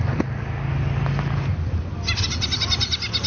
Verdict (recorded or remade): recorded